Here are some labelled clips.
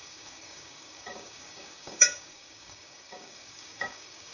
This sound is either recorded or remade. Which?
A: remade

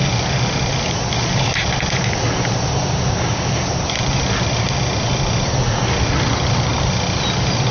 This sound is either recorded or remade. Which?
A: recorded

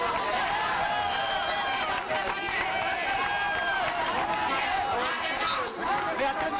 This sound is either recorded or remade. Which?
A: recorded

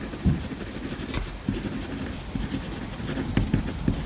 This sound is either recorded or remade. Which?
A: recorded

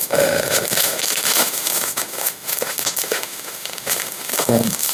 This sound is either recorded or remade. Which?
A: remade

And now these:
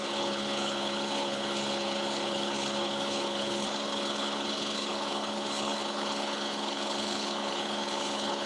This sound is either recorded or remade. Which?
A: remade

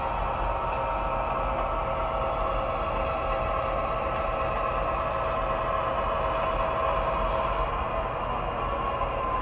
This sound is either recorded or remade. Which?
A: recorded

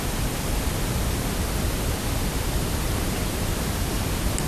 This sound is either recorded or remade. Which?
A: remade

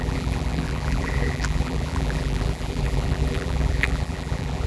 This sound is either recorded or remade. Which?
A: remade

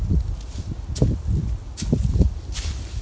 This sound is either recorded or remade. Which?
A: recorded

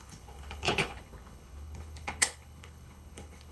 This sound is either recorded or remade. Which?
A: remade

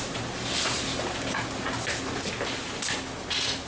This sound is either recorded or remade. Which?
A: recorded